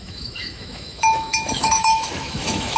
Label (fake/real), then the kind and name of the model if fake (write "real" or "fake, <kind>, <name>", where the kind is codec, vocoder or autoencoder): fake, autoencoder, DAC-VAE